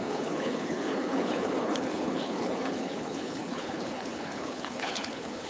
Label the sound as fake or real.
fake